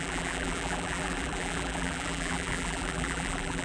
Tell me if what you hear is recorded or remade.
remade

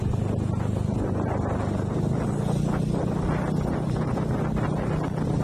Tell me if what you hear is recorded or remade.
recorded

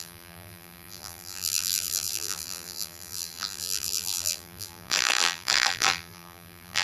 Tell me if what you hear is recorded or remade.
remade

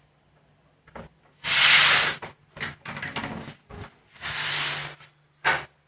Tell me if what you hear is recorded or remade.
recorded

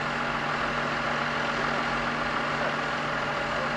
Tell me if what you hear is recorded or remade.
recorded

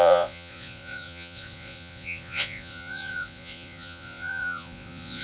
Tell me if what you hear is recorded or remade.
remade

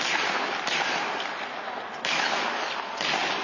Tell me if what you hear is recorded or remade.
recorded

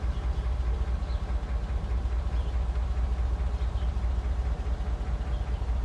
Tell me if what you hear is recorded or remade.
recorded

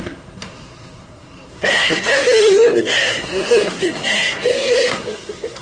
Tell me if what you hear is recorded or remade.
remade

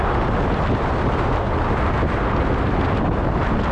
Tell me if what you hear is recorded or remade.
recorded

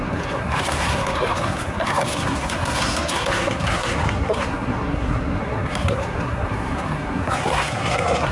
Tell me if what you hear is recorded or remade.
remade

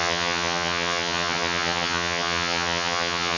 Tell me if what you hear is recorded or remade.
remade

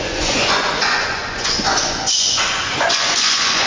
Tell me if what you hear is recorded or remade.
remade